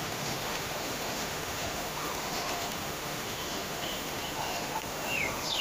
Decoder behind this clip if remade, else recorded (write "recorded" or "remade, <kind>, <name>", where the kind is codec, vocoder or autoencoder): remade, autoencoder, DAC-VAE